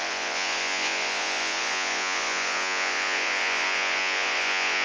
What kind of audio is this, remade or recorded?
remade